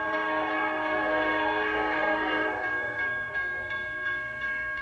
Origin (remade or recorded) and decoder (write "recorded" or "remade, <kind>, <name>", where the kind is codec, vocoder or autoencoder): remade, codec, SNAC